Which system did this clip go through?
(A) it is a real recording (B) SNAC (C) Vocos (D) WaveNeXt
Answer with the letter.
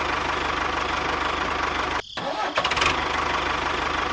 A